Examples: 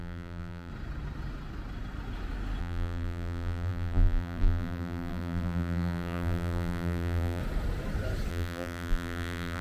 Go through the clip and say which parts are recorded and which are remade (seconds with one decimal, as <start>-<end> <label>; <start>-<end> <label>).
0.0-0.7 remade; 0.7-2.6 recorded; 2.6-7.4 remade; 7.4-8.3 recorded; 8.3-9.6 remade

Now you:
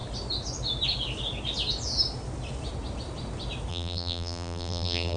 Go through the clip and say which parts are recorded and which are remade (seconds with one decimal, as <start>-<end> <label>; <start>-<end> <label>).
0.0-3.7 recorded; 3.7-5.2 remade

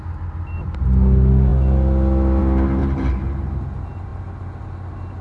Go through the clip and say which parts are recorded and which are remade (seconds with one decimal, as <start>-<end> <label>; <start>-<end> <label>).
0.0-2.8 recorded; 2.8-3.6 remade; 3.6-5.2 recorded